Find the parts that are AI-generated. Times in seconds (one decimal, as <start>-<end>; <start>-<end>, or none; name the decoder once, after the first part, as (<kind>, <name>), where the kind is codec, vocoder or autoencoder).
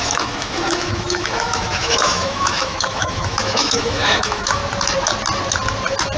0.0-4.6 (autoencoder, DAC-VAE)